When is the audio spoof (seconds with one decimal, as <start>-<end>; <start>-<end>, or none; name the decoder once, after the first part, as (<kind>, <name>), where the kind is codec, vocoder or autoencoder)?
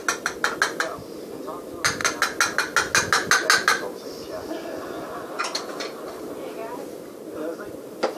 none